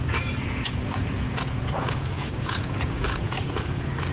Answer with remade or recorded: remade